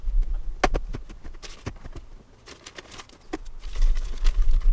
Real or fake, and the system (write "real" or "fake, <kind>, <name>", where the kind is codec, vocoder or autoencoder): real